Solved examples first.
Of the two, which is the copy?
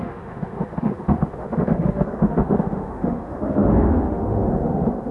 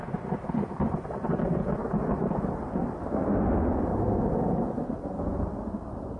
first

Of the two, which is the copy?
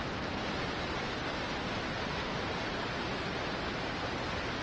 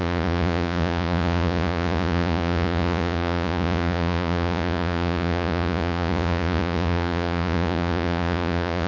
second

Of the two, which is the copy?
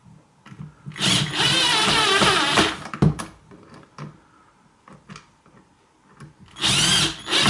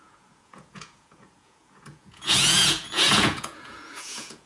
second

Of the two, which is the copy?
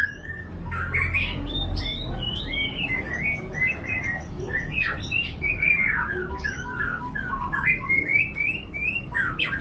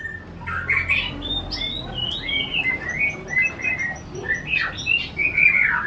first